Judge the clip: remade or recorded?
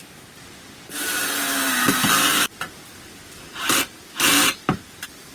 recorded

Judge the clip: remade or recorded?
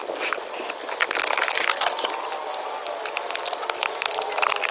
recorded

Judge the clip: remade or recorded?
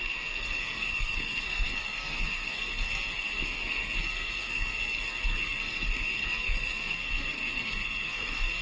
remade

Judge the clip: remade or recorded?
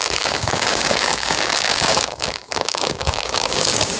remade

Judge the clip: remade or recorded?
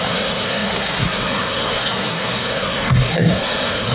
remade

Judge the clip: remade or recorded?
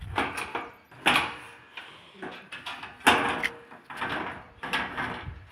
recorded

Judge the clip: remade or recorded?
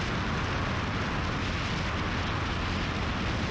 recorded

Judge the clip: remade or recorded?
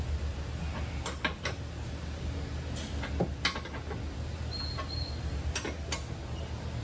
recorded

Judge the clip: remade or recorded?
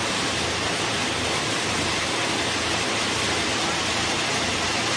recorded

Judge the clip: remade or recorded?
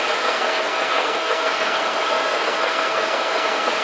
remade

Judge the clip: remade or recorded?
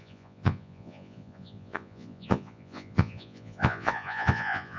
remade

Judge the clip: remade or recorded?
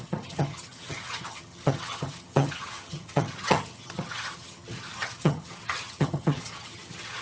remade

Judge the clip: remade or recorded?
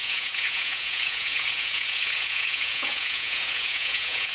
remade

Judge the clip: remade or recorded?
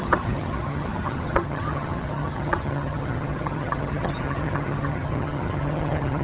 remade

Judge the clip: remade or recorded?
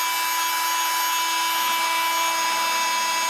recorded